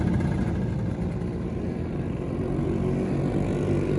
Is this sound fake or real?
real